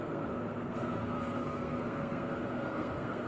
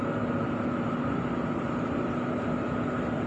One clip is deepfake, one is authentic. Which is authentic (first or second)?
second